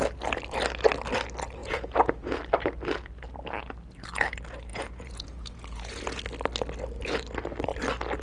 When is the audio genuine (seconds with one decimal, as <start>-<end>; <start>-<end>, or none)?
0.0-1.6; 2.4-4.7; 6.2-8.2